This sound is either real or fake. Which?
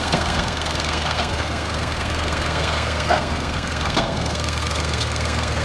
fake